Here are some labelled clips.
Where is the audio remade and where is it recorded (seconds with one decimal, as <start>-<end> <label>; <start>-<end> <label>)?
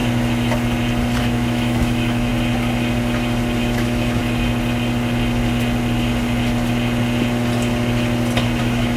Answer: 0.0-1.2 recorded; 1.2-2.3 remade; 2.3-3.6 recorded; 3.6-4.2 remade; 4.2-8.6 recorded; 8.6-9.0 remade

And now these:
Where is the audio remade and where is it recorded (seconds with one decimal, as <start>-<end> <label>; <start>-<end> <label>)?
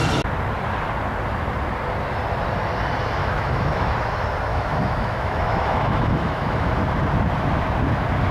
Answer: 0.0-3.2 recorded; 3.2-3.9 remade; 3.9-4.5 recorded; 4.5-6.7 remade; 6.7-8.3 recorded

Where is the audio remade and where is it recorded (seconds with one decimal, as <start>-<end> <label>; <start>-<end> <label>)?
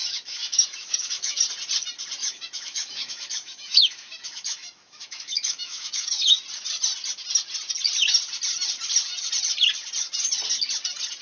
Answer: 0.0-1.4 remade; 1.4-2.2 recorded; 2.2-6.3 remade; 6.3-11.2 recorded